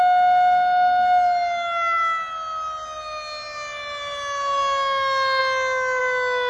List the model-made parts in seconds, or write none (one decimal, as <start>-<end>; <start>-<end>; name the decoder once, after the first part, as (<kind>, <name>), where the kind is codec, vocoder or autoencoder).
none